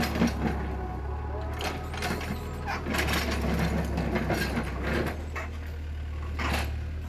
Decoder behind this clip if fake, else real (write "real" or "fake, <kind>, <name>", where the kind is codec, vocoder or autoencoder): real